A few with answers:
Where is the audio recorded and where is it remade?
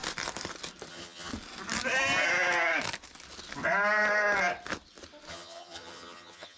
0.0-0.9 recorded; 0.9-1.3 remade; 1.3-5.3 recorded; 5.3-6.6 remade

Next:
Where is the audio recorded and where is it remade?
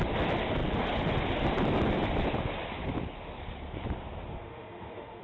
0.0-4.3 recorded; 4.3-5.2 remade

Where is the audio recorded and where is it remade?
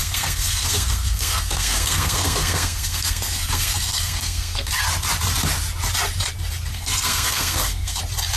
0.0-4.7 remade; 4.7-6.7 recorded; 6.7-8.0 remade; 8.0-8.4 recorded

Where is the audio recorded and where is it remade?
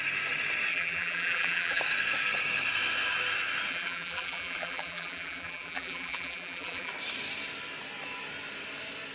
0.0-0.7 recorded; 0.7-1.8 remade; 1.8-3.7 recorded; 3.7-6.9 remade; 6.9-9.1 recorded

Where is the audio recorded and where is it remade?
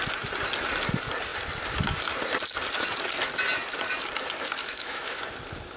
0.0-4.6 recorded; 4.6-5.2 remade; 5.2-5.8 recorded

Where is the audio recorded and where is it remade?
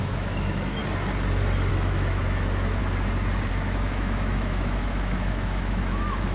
0.0-0.8 remade; 0.8-1.7 recorded; 1.7-2.8 remade; 2.8-3.5 recorded; 3.5-6.3 remade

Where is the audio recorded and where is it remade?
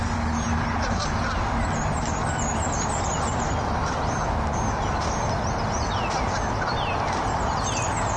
0.0-2.5 recorded; 2.5-3.1 remade; 3.1-8.2 recorded